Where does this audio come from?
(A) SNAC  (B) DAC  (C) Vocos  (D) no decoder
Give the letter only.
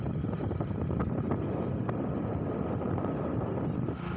D